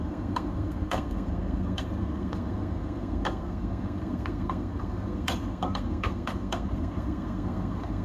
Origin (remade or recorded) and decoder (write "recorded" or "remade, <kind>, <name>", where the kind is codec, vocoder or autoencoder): remade, codec, SNAC